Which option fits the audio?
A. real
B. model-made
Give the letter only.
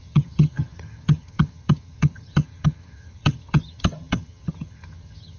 B